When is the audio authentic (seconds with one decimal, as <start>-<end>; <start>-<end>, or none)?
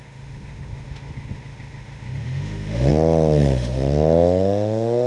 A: none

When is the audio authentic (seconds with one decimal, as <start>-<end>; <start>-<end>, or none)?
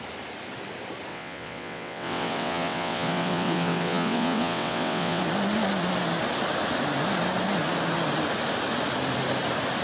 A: 0.0-1.1; 5.2-9.8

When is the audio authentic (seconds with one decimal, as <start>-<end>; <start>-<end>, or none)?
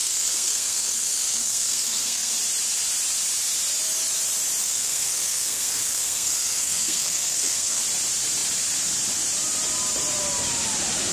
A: 2.3-4.6; 7.8-11.1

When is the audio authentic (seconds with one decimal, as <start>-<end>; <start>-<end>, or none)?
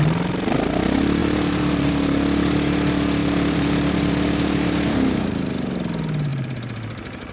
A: 0.0-1.2; 1.9-3.2; 5.3-6.3